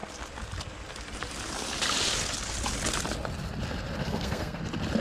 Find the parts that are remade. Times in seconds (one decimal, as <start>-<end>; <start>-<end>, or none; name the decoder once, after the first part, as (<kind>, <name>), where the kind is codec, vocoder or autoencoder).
4.0-4.6 (codec, SNAC)